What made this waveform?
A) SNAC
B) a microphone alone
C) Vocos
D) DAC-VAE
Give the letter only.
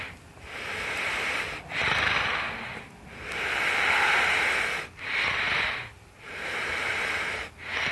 B